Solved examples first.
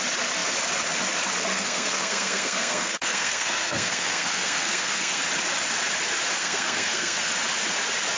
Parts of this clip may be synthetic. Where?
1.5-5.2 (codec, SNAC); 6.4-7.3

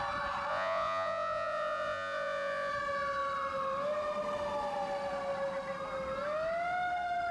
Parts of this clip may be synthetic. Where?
0.5-2.7 (vocoder, Vocos)

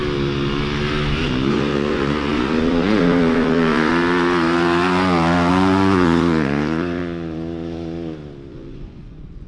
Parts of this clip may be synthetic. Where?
1.5-3.9 (vocoder, Vocos); 5.5-7.0; 8.5-9.5

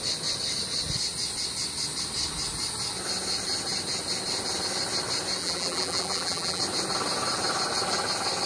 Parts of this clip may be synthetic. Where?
5.4-6.6 (vocoder, BigVGAN v2)